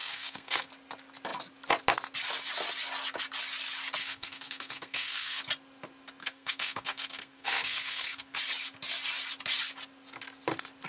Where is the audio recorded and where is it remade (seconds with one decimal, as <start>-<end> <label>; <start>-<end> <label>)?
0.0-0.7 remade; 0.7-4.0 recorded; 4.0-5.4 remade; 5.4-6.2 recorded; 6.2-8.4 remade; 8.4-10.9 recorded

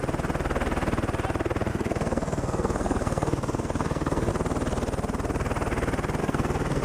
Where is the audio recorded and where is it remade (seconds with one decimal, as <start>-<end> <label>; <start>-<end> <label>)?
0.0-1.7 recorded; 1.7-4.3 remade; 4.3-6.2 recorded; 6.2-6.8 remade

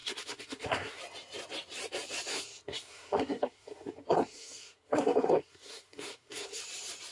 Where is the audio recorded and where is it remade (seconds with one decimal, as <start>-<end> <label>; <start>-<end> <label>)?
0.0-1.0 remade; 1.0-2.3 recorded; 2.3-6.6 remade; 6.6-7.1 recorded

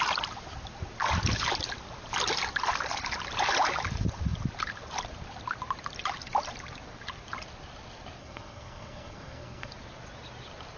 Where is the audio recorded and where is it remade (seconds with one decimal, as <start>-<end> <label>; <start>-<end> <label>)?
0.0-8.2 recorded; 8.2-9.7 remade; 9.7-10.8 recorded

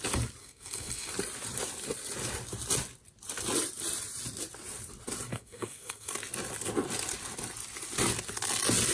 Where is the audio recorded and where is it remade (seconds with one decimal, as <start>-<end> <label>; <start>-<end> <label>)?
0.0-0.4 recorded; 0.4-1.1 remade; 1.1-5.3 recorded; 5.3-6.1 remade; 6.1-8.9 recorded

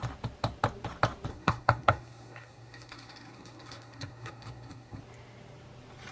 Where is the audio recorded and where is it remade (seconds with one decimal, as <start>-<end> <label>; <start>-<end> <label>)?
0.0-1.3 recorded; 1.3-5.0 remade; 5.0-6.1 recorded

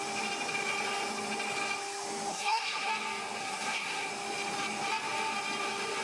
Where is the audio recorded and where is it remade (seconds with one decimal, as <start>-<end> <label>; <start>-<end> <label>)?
0.0-2.3 recorded; 2.3-2.9 remade; 2.9-3.4 recorded; 3.4-4.1 remade; 4.1-6.0 recorded